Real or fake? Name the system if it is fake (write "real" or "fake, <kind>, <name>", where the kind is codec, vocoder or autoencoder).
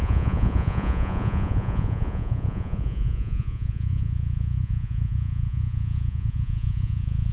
fake, vocoder, Vocos